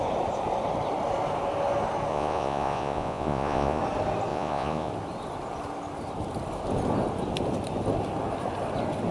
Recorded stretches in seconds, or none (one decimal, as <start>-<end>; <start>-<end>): 0.0-2.1; 3.8-4.3; 4.9-9.1

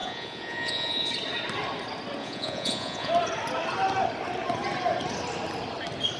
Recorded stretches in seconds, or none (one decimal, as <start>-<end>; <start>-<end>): 1.1-2.2; 3.1-6.2

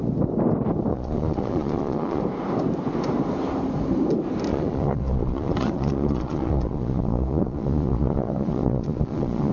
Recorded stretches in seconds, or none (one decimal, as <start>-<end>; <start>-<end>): 0.0-0.9; 2.2-4.5

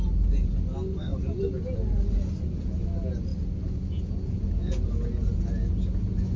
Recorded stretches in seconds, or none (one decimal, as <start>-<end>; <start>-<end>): 0.0-6.4

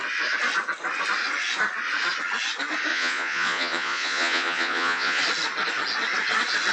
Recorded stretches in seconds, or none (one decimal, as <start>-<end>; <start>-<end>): 0.0-2.9; 5.2-6.7

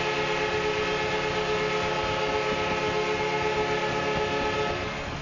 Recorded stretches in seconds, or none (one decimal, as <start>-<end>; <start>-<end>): 0.0-5.2